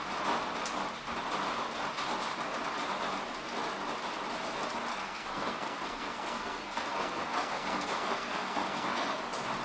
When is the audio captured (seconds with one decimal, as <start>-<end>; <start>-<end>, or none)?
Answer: 0.0-4.9; 9.2-9.6